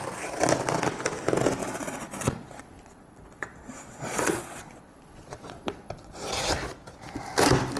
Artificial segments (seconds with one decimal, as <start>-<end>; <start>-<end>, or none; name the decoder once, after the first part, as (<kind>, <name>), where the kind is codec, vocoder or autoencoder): 1.6-6.3 (vocoder, Vocos)